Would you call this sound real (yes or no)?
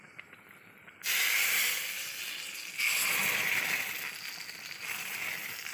yes